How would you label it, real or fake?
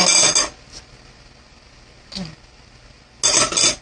real